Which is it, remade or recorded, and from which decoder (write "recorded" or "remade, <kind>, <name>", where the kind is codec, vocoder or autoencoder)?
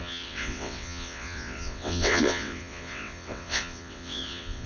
remade, vocoder, WaveNeXt